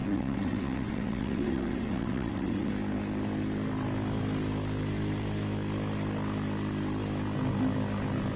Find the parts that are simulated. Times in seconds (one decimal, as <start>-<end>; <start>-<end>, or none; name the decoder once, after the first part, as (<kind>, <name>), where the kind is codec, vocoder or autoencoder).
0.0-2.7 (vocoder, WaveNeXt)